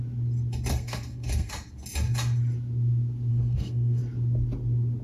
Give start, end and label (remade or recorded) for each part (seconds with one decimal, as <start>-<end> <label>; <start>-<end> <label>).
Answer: 0.0-0.7 recorded; 0.7-1.5 remade; 1.5-3.3 recorded; 3.3-4.0 remade; 4.0-5.0 recorded